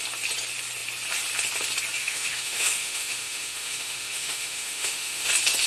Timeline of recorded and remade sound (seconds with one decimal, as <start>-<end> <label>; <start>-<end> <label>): 0.0-2.0 recorded; 2.0-5.3 remade; 5.3-5.7 recorded